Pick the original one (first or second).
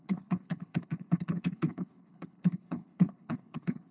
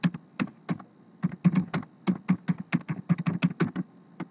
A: second